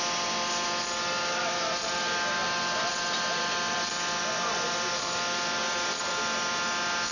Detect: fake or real real